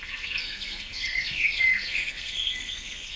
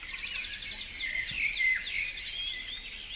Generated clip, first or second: first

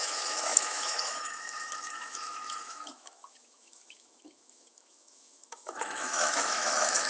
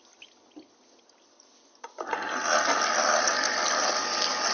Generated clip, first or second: first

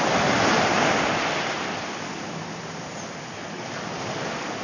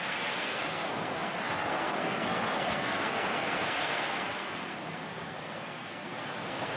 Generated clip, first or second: second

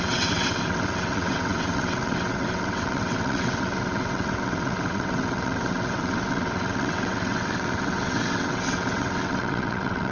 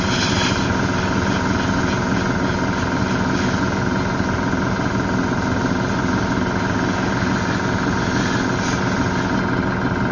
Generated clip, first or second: first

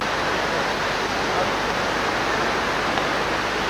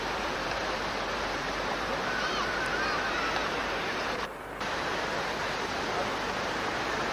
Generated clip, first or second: second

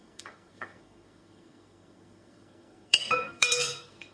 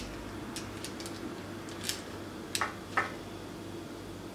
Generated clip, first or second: first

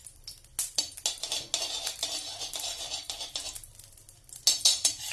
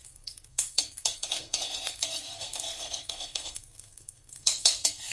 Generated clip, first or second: second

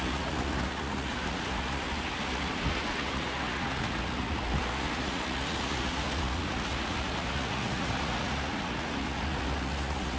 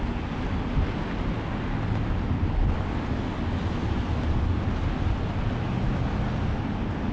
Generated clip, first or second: first